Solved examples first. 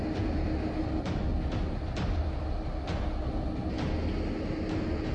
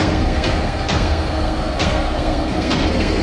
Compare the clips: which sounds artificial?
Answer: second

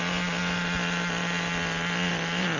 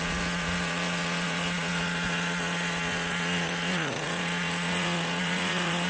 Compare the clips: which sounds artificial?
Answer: second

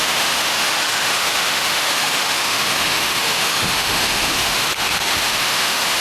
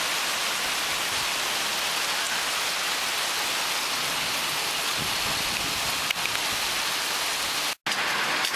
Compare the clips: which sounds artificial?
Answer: first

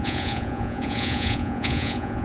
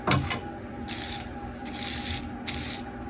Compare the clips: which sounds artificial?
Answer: first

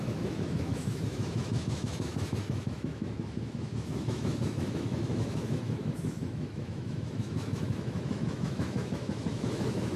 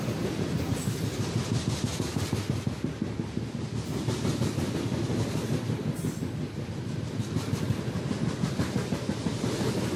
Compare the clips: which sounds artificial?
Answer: first